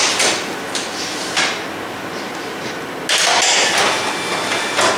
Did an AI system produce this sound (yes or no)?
no